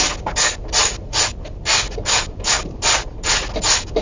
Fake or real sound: real